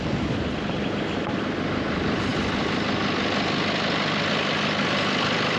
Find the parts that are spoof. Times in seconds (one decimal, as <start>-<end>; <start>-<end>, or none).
none